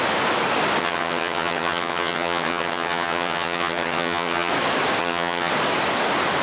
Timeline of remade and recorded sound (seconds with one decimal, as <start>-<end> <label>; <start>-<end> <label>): 0.0-0.8 recorded; 0.8-4.5 remade; 4.5-5.0 recorded; 5.0-5.5 remade; 5.5-6.4 recorded